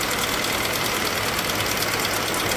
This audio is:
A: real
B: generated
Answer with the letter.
A